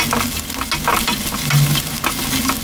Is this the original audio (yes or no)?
yes